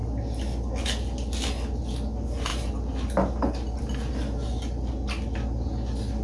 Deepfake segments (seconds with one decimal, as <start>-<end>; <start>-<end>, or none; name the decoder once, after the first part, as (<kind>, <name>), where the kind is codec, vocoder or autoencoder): none